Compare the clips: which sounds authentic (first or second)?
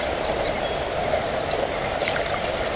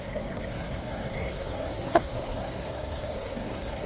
first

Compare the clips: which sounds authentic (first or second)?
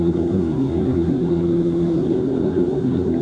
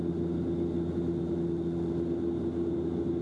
second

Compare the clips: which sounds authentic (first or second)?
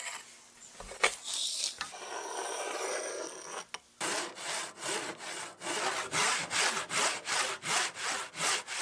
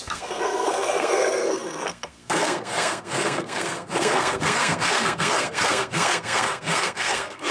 first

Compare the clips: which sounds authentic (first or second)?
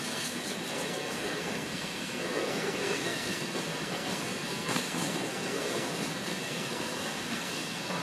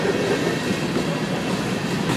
second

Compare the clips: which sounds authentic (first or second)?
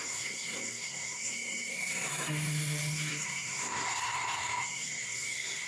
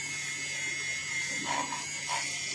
second